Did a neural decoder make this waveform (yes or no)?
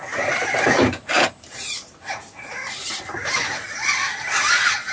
no